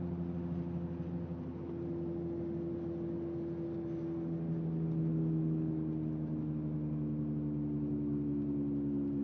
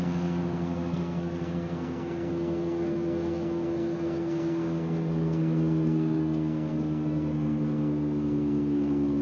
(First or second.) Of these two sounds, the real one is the first